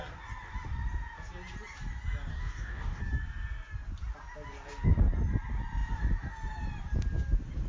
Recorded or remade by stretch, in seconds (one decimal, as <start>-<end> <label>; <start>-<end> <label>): 0.0-2.3 recorded; 2.3-3.0 remade; 3.0-7.7 recorded